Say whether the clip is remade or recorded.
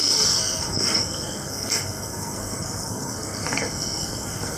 remade